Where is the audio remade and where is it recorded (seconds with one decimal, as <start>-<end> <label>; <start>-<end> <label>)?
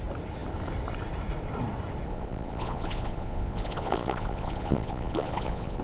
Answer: 0.0-2.1 recorded; 2.1-5.8 remade